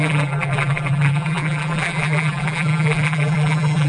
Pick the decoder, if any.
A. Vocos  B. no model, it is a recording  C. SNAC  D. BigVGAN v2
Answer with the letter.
D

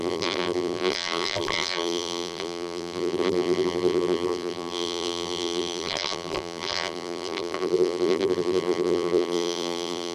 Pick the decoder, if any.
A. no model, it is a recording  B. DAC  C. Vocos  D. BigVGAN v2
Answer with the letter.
D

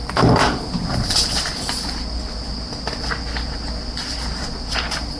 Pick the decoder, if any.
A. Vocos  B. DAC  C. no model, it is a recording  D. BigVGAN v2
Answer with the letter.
C